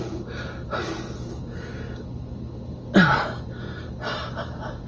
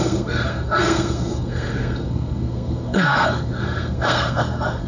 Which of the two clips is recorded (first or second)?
first